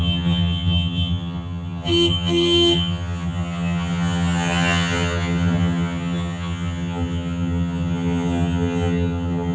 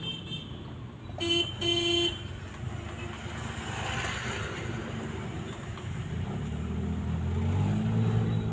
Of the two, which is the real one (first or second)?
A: second